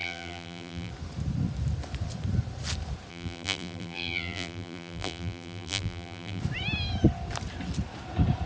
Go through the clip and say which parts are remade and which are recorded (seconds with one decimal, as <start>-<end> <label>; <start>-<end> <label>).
0.0-0.9 remade; 0.9-3.1 recorded; 3.1-6.4 remade; 6.4-8.5 recorded